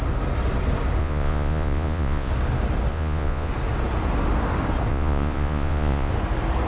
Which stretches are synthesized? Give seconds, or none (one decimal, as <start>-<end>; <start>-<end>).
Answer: 1.0-2.3; 2.9-3.5; 4.9-6.1